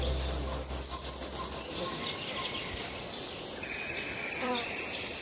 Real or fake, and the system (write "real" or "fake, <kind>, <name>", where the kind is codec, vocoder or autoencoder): real